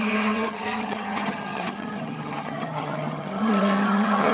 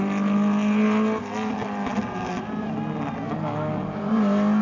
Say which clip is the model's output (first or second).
first